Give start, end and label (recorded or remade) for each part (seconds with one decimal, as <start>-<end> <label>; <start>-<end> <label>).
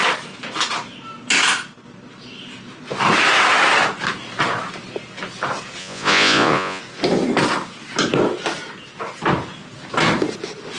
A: 0.0-5.8 recorded; 5.8-6.8 remade; 6.8-10.8 recorded